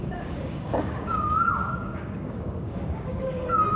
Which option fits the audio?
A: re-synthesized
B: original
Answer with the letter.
A